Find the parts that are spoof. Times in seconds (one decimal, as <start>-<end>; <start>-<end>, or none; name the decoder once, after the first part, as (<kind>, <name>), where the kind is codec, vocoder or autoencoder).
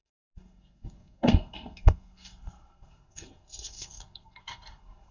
0.0-5.1 (codec, SNAC)